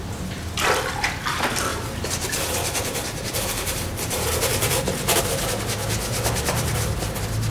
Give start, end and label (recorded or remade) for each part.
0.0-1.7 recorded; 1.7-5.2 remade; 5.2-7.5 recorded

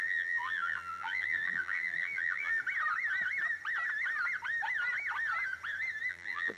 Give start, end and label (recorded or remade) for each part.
0.0-2.6 remade; 2.6-6.1 recorded; 6.1-6.6 remade